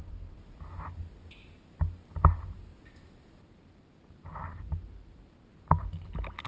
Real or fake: real